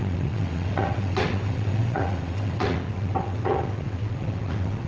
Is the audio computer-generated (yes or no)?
yes